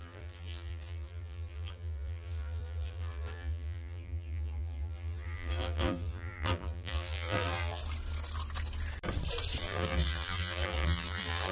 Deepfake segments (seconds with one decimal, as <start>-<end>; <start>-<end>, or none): 0.0-7.8; 9.6-11.5